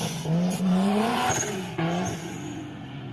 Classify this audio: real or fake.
fake